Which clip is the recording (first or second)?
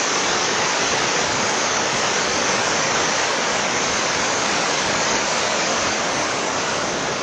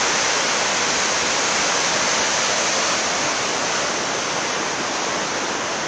second